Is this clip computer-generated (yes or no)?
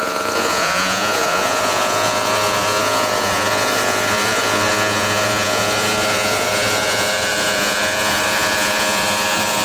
yes